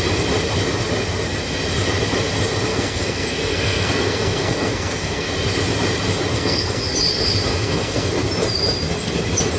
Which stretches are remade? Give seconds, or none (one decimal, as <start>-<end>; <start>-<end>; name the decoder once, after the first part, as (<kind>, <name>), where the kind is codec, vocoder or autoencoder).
2.7-5.3 (codec, SNAC); 6.3-6.8; 7.5-8.1